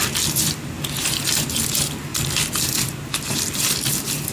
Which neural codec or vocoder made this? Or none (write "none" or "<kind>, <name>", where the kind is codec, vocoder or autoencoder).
none